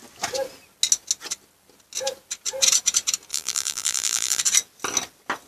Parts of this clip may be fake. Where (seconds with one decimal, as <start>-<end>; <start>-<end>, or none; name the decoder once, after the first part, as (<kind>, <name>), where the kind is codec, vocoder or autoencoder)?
3.3-4.4 (vocoder, BigVGAN v2)